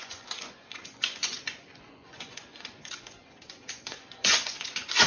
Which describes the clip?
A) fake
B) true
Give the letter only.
A